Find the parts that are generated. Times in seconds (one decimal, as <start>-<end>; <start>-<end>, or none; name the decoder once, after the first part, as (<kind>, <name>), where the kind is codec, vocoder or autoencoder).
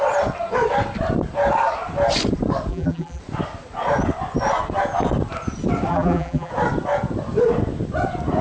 2.7-3.2 (vocoder, BigVGAN v2); 5.9-6.5